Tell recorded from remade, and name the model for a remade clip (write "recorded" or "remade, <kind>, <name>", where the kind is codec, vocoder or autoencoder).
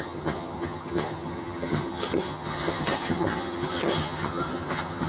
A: remade, vocoder, HiFi-GAN